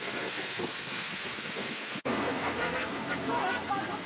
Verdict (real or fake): fake